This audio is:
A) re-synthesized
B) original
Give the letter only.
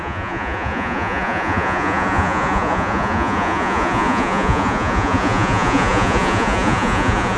A